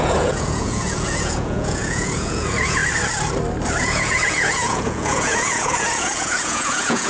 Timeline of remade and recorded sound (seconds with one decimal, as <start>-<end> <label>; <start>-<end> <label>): 0.0-2.8 remade; 2.8-3.8 recorded; 3.8-7.1 remade